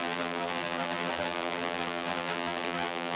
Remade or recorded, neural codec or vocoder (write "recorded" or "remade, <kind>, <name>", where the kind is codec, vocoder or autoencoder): remade, vocoder, BigVGAN v2